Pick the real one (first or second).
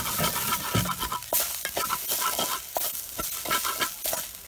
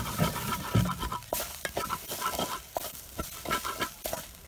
first